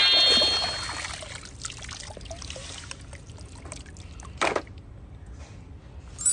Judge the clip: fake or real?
real